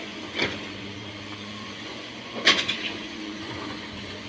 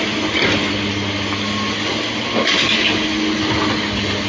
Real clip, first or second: second